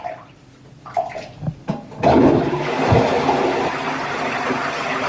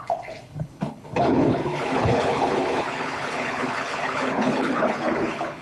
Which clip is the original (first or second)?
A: first